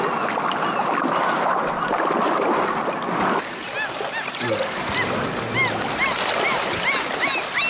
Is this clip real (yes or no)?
yes